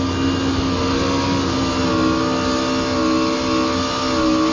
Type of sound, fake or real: real